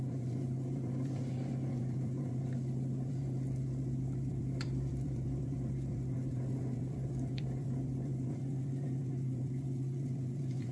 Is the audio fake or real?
fake